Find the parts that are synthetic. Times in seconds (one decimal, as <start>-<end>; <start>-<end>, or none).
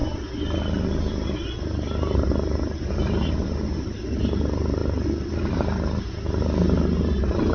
none